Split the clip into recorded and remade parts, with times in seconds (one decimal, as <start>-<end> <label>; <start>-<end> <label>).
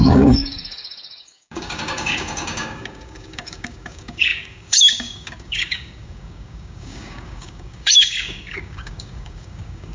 0.0-9.9 remade